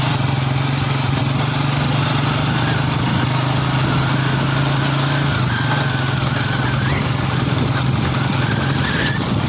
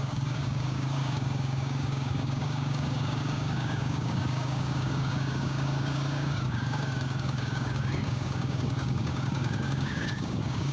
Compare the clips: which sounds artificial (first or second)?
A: second